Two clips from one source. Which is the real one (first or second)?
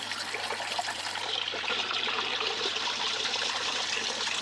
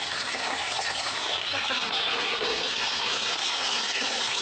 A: first